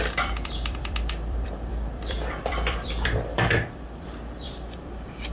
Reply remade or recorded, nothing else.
remade